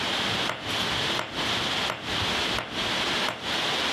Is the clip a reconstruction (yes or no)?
no